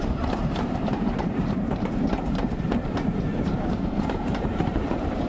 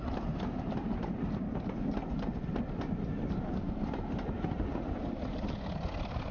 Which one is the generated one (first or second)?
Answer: first